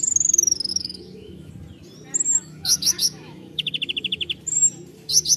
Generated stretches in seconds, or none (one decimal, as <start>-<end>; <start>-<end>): 0.7-1.5; 2.4-3.7